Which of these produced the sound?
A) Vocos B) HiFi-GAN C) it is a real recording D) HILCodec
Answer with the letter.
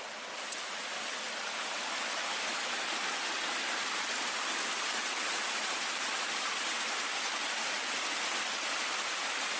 C